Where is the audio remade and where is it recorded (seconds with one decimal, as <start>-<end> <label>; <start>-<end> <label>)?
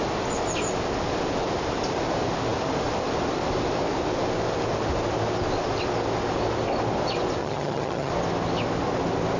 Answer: 0.0-7.4 recorded; 7.4-8.1 remade; 8.1-9.4 recorded